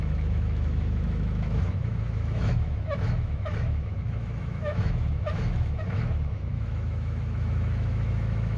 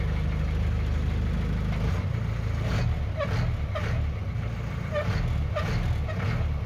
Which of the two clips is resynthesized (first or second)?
first